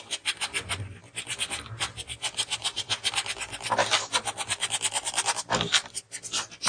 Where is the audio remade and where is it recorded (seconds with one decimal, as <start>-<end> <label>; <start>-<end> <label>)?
0.0-2.6 recorded; 2.6-3.1 remade; 3.1-6.7 recorded